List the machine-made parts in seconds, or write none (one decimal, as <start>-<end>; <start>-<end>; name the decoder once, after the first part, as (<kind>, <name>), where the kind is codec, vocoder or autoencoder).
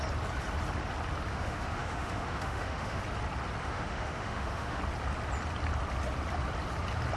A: 1.3-3.0 (autoencoder, DAC-VAE); 3.6-4.8